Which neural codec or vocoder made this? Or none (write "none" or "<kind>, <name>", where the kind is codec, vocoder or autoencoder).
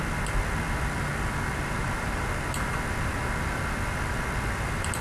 none